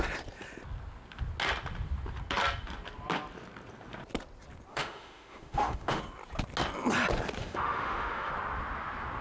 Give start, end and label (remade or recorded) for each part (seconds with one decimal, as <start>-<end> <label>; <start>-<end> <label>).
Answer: 0.0-4.7 recorded; 4.7-6.0 remade; 6.0-7.4 recorded; 7.4-8.3 remade; 8.3-9.2 recorded